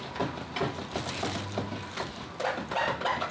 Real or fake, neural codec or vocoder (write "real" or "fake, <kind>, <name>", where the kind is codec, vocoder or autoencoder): real